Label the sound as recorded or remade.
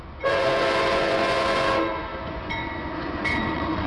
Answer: remade